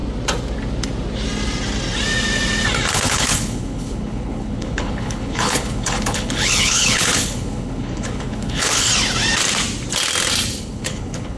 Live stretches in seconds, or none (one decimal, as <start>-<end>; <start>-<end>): 0.0-2.9; 8.9-10.6